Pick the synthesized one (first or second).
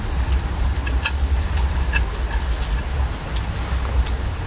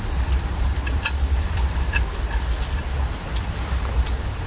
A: second